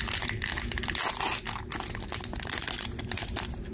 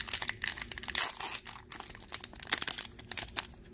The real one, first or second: second